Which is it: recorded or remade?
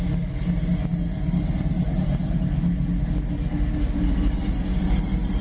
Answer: recorded